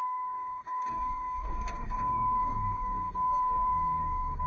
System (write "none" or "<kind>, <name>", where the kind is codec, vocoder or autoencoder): codec, DAC